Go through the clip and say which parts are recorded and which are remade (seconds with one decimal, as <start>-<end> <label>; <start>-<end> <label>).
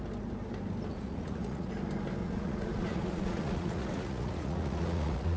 0.0-0.9 recorded; 0.9-1.7 remade; 1.7-2.2 recorded; 2.2-5.4 remade